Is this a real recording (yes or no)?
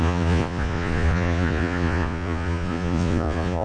no